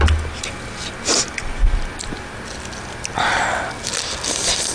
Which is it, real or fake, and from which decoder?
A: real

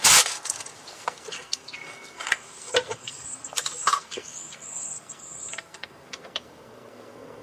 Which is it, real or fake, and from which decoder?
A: fake, codec, SNAC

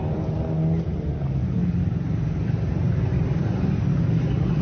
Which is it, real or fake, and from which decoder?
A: real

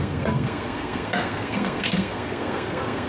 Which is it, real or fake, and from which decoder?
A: fake, codec, SNAC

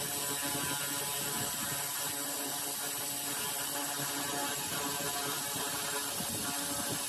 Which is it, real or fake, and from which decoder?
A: real